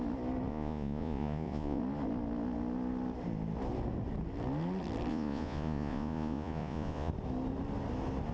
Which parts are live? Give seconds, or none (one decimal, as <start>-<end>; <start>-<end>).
0.0-0.5; 1.8-5.1; 7.1-8.3